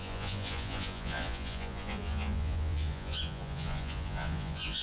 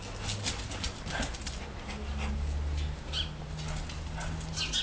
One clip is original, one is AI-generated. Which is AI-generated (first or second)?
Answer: first